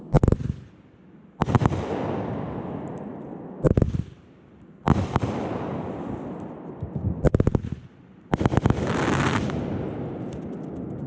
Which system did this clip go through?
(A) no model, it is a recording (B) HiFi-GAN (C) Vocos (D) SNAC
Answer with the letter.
A